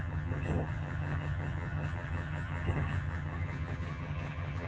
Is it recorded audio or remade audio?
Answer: remade